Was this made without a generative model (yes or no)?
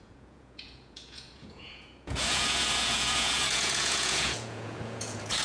no